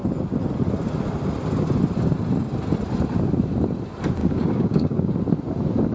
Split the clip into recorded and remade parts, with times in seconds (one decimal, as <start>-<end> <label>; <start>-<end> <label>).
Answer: 0.0-4.2 recorded; 4.2-5.1 remade; 5.1-5.9 recorded